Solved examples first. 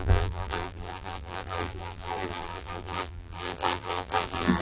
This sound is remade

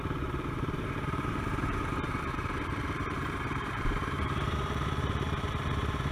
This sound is remade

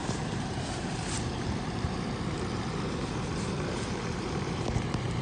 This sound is remade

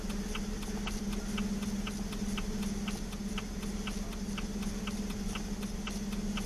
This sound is recorded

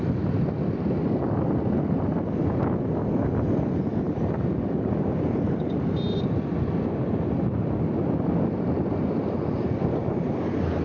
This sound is recorded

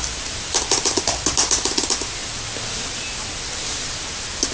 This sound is recorded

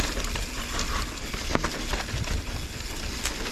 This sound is recorded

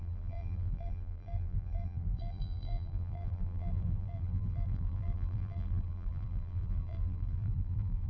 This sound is remade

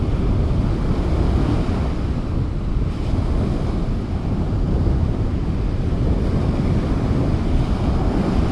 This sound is recorded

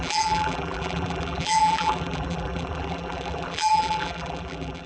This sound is remade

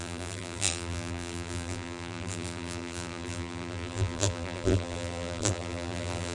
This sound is remade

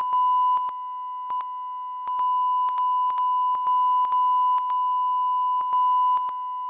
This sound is recorded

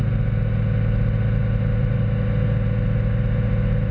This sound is recorded